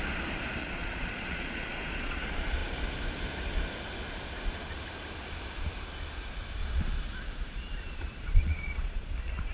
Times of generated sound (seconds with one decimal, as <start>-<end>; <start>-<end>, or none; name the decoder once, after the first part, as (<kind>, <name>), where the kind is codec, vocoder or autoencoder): 0.6-2.2 (vocoder, Vocos); 6.6-9.0